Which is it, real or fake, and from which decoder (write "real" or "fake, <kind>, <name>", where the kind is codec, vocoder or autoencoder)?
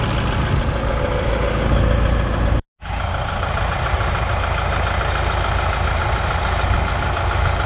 real